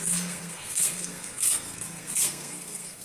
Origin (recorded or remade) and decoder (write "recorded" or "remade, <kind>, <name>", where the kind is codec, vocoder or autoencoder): remade, codec, SNAC